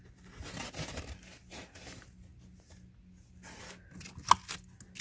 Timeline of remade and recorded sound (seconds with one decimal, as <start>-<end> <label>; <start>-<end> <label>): 0.0-5.0 recorded